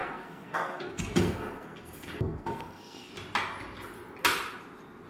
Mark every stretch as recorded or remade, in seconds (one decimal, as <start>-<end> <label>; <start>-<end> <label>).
0.0-3.1 remade; 3.1-5.1 recorded